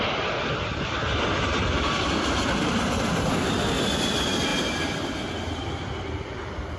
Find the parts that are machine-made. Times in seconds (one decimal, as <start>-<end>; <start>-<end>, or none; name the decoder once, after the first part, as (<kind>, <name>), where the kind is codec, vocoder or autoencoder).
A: 0.0-4.5 (vocoder, BigVGAN v2); 6.0-6.8